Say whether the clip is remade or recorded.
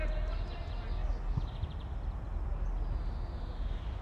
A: recorded